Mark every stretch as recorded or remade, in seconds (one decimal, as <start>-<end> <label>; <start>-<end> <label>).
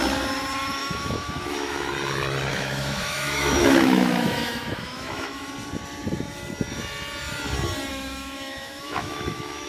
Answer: 0.0-0.8 recorded; 0.8-1.9 remade; 1.9-2.5 recorded; 2.5-5.5 remade; 5.5-7.9 recorded; 7.9-9.7 remade